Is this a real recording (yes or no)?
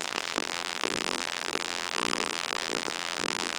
no